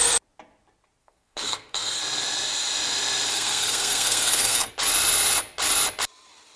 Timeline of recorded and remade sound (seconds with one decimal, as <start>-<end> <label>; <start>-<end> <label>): 0.0-1.0 recorded; 1.0-2.0 remade; 2.0-3.3 recorded; 3.3-4.7 remade; 4.7-6.6 recorded

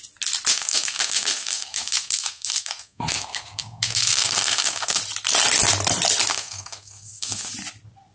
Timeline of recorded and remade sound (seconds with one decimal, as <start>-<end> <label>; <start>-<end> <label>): 0.0-0.5 recorded; 0.5-5.0 remade; 5.0-6.3 recorded; 6.3-7.5 remade; 7.5-8.1 recorded

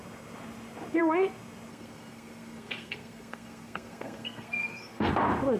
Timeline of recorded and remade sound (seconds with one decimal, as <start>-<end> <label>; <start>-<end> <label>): 0.0-1.7 recorded; 1.7-5.1 remade; 5.1-5.6 recorded

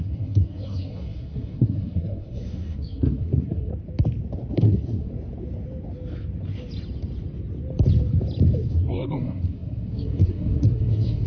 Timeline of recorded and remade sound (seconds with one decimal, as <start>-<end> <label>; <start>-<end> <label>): 0.0-3.7 remade; 3.7-4.5 recorded; 4.5-5.1 remade; 5.1-8.7 recorded; 8.7-11.3 remade

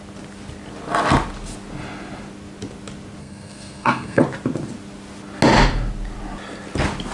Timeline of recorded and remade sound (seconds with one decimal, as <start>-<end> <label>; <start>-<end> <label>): 0.0-3.2 recorded; 3.2-4.2 remade; 4.2-7.1 recorded

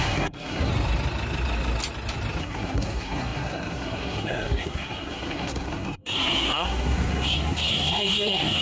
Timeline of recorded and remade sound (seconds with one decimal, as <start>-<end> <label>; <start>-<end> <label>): 0.0-0.7 remade; 0.7-2.4 recorded; 2.4-8.6 remade

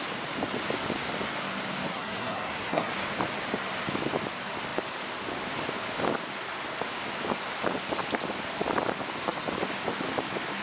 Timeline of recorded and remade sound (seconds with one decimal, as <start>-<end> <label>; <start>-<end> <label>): 0.0-1.9 recorded; 1.9-2.9 remade; 2.9-10.6 recorded